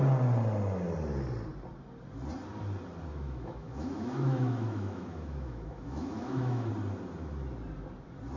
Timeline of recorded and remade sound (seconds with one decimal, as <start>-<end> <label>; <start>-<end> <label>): 0.0-3.1 recorded; 3.1-6.7 remade; 6.7-8.4 recorded